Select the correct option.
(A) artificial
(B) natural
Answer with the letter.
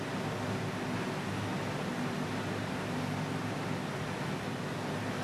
B